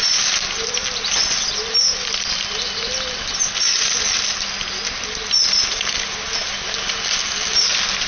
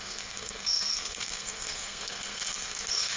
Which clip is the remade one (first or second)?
second